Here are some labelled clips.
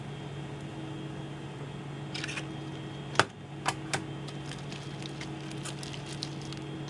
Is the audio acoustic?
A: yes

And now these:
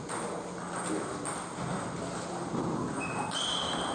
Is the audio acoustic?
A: yes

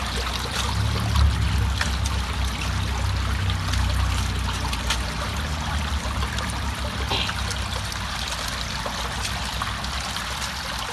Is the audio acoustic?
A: yes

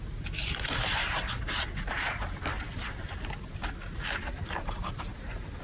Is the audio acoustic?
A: yes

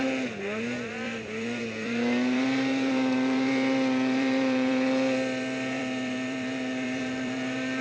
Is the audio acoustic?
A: no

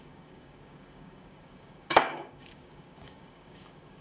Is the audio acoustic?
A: no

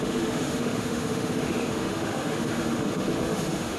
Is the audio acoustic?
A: no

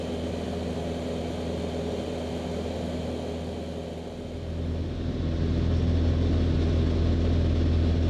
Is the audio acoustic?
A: yes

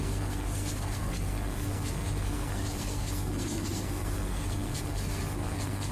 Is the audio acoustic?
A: no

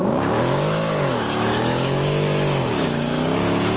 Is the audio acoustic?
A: no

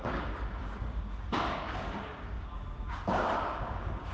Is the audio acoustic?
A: no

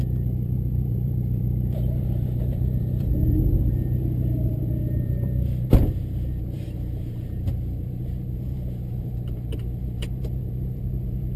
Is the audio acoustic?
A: no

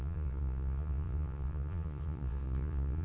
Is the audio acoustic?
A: no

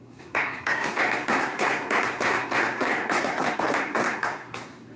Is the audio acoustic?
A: no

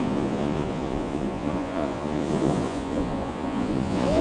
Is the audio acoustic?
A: no